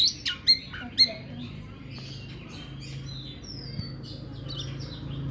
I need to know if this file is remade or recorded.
recorded